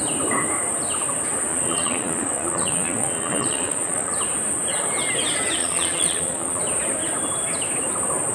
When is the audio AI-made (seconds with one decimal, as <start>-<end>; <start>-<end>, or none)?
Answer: 1.5-4.1; 5.6-6.6